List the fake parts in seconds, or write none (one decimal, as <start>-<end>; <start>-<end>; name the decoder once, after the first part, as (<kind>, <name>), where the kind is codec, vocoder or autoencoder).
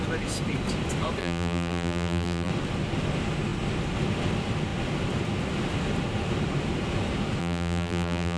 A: 1.2-2.5 (vocoder, BigVGAN v2); 7.4-8.4